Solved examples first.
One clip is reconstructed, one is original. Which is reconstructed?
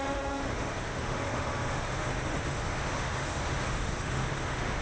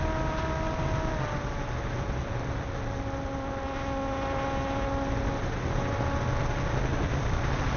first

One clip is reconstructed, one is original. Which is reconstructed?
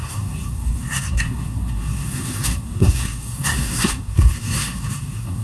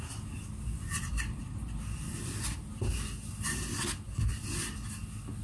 first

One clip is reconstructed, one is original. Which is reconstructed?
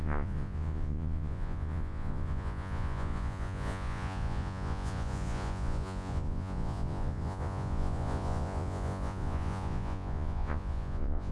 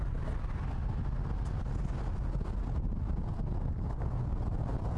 first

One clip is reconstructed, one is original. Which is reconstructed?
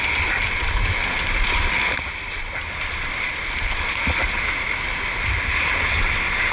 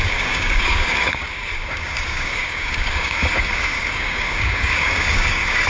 second